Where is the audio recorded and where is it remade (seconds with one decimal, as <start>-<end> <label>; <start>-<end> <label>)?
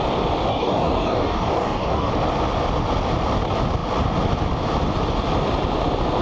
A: 0.0-0.5 recorded; 0.5-2.1 remade; 2.1-6.2 recorded